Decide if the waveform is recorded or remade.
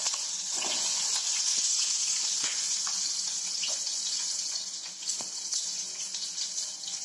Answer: remade